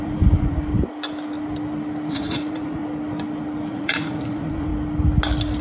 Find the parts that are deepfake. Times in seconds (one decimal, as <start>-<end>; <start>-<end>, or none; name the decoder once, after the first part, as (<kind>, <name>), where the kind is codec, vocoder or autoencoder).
0.0-0.7 (vocoder, Vocos); 2.1-2.8; 3.7-4.7